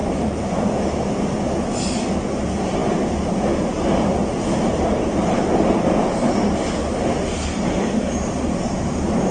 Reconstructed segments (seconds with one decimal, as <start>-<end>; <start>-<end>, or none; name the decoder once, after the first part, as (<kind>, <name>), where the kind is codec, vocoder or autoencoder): none